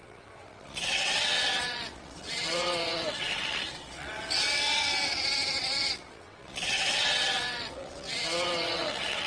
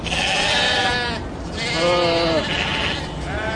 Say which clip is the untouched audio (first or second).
second